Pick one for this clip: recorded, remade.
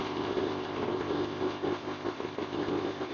remade